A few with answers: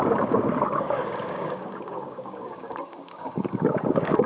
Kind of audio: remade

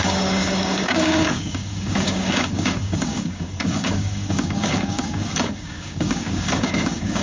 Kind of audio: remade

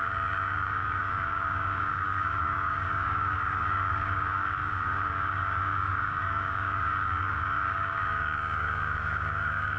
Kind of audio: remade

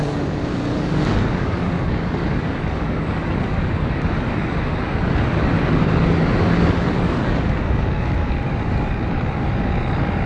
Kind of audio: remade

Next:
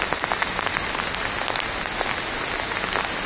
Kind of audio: recorded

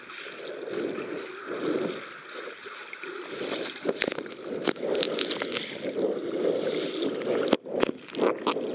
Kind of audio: recorded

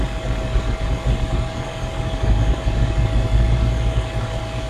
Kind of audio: remade